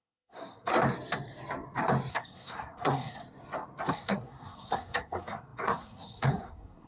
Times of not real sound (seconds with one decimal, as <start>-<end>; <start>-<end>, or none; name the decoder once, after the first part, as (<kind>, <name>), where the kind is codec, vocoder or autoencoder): 0.0-0.7 (codec, SNAC); 2.1-3.2; 3.9-6.9